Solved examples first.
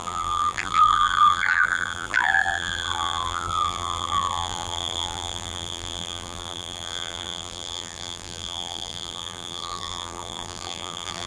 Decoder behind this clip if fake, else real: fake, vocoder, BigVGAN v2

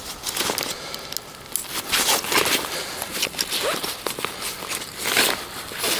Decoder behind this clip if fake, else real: real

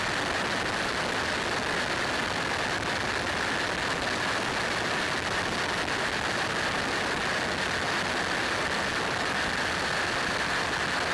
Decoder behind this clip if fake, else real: real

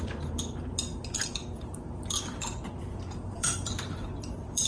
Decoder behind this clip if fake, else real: fake, vocoder, BigVGAN v2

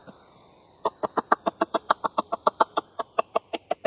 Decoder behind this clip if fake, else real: fake, vocoder, BigVGAN v2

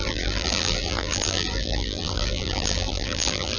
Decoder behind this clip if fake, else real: fake, vocoder, BigVGAN v2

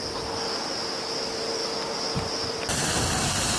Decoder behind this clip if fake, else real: real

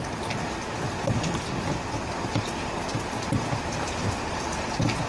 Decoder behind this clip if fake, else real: real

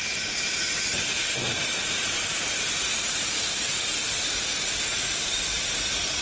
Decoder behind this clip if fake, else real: fake, vocoder, BigVGAN v2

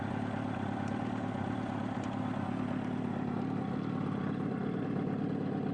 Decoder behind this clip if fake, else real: real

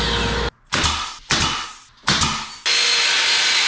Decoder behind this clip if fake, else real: real